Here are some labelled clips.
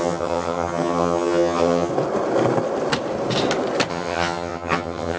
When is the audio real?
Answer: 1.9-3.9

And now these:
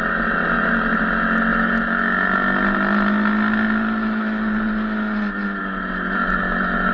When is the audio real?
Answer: 0.0-6.9

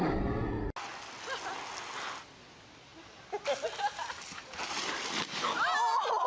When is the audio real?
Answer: 0.0-6.3

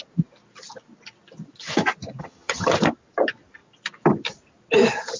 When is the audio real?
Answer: 0.0-2.2; 2.7-5.2